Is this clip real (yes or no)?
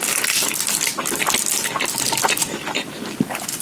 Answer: yes